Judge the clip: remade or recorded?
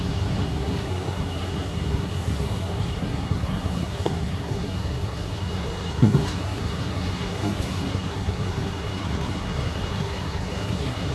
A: remade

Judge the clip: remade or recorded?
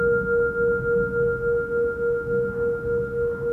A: recorded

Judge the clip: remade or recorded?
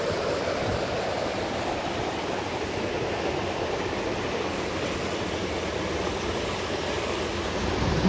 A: recorded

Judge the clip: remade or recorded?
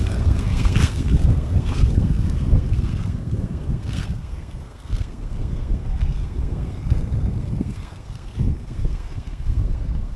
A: remade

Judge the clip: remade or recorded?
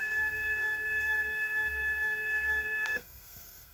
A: remade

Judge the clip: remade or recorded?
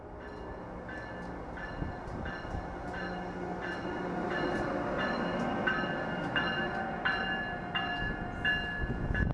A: recorded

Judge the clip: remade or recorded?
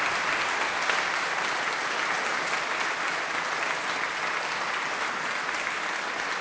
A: recorded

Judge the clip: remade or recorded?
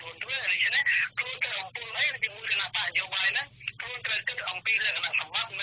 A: recorded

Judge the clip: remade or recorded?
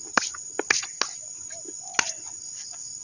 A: recorded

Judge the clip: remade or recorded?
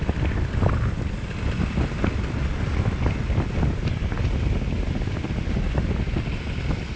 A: recorded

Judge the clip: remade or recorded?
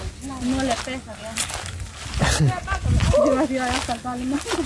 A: recorded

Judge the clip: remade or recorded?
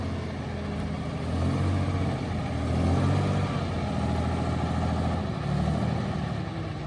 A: recorded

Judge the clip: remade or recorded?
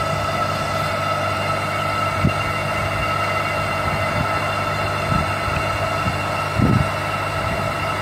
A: recorded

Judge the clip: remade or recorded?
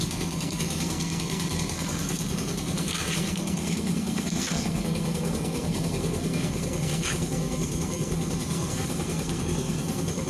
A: remade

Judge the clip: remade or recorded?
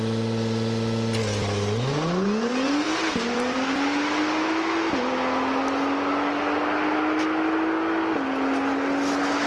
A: recorded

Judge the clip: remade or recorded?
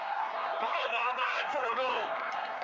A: remade